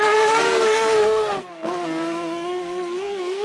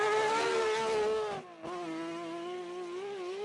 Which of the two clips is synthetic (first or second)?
first